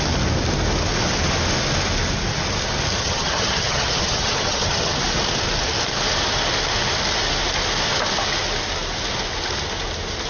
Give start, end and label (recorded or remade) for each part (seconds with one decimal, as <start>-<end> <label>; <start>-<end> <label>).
0.0-3.0 recorded; 3.0-4.9 remade; 4.9-10.3 recorded